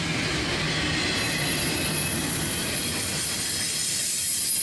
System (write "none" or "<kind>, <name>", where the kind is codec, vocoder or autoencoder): none